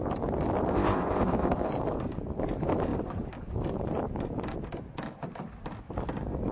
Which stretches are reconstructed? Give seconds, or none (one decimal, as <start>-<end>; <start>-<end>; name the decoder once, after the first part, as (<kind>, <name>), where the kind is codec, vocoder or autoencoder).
0.7-1.7 (codec, ZipCodec)